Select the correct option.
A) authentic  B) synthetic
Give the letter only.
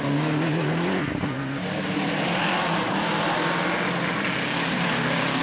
A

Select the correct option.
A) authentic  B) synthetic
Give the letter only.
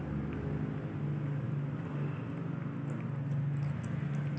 A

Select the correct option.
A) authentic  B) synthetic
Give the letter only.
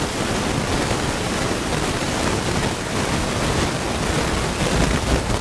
A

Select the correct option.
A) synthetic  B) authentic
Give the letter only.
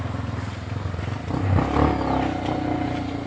B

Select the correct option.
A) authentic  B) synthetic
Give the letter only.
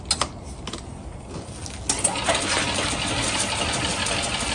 A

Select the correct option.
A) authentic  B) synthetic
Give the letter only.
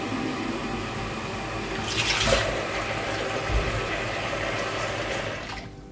A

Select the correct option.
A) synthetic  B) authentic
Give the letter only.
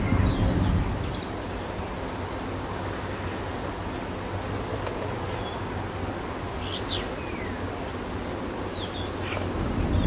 B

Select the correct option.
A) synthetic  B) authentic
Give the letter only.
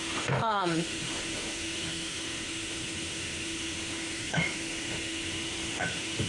A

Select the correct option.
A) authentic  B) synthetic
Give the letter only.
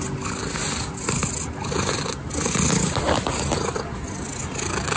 A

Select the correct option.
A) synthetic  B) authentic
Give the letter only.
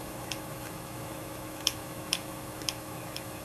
A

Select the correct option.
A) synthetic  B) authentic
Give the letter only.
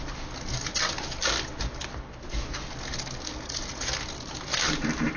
B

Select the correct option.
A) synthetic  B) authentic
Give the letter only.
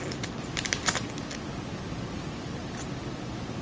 B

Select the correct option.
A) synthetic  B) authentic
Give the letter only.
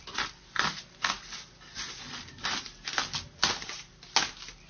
B